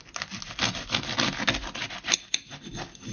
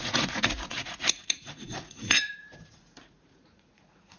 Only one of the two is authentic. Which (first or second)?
first